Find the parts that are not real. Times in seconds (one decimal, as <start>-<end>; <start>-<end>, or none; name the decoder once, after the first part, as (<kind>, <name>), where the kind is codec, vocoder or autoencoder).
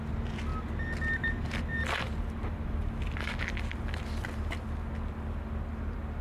none